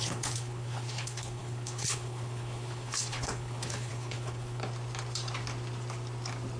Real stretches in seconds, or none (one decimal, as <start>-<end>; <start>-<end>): 4.6-6.6